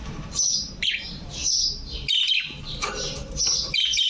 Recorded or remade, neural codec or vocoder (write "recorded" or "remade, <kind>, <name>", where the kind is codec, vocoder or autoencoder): remade, vocoder, BigVGAN v2